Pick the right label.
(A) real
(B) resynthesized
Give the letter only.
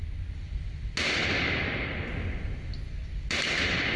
A